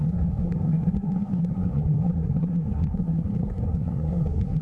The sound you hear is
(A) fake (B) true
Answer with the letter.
A